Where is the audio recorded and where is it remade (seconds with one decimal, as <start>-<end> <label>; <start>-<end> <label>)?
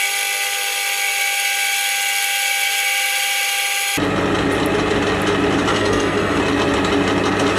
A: 0.0-5.7 recorded; 5.7-6.4 remade; 6.4-7.6 recorded